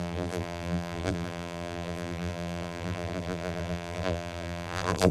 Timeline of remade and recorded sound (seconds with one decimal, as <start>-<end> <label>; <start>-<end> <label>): 0.0-5.1 remade